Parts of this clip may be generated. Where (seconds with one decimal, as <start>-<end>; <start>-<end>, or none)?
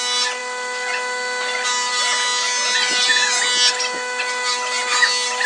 4.9-5.5